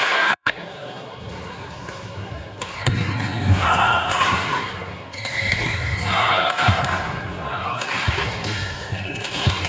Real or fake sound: fake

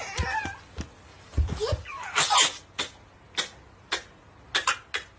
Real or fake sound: real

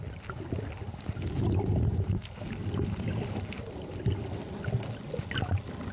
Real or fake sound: real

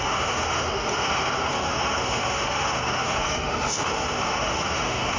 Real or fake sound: fake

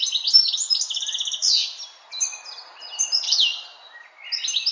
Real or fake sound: real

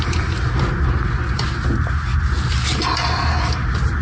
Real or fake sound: real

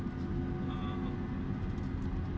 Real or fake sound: real